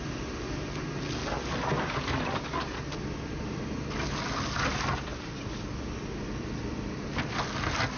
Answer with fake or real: real